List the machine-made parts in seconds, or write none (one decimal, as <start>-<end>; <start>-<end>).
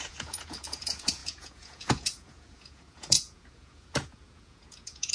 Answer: 0.0-5.1